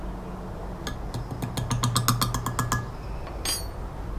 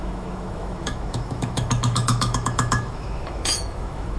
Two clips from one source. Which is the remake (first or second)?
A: second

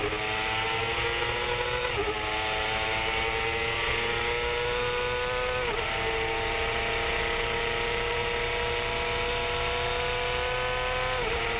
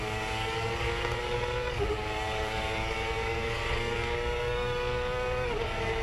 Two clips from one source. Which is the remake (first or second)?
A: second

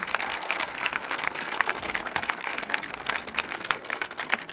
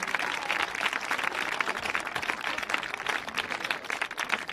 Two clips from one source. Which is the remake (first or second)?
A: first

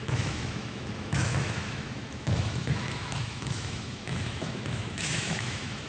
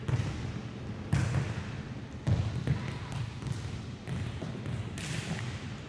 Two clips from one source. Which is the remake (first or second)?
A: first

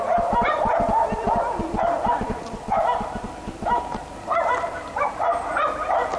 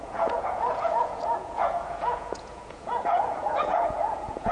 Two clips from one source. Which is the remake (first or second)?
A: second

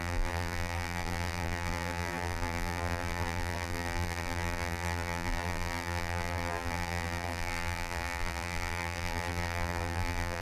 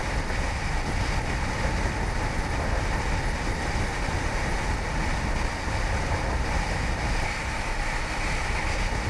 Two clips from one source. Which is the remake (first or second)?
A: first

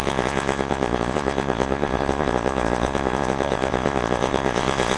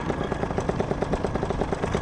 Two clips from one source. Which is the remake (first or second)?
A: first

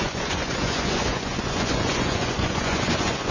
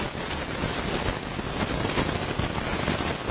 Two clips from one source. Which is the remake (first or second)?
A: first